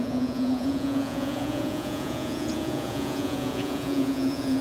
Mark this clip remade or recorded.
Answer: remade